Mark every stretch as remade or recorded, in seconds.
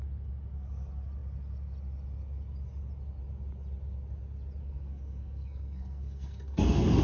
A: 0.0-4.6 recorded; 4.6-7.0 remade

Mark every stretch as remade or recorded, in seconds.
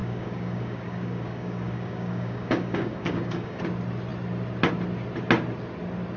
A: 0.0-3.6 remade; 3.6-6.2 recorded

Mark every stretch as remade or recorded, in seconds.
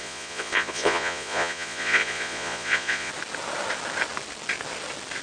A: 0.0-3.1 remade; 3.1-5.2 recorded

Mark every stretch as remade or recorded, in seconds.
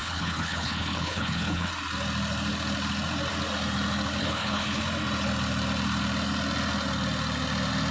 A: 0.0-1.7 remade; 1.7-4.2 recorded; 4.2-4.8 remade; 4.8-7.9 recorded